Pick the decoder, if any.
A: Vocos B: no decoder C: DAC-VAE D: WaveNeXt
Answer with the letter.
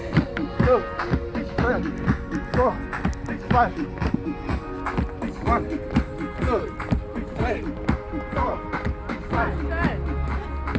B